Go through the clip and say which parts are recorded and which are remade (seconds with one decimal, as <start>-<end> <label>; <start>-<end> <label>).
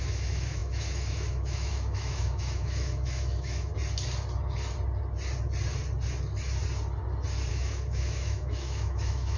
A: 0.0-3.7 remade; 3.7-7.5 recorded; 7.5-9.4 remade